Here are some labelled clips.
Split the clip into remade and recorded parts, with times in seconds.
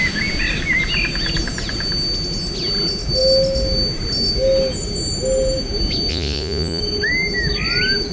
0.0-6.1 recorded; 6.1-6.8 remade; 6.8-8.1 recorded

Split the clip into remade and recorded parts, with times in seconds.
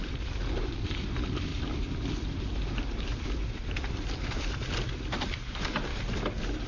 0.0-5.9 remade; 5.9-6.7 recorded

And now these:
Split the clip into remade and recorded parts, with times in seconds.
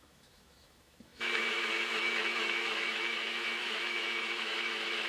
0.0-5.1 remade